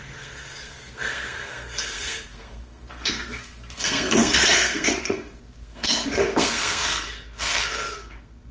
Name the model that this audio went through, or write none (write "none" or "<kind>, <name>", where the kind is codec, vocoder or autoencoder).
codec, SNAC